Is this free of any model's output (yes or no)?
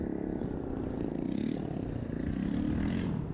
yes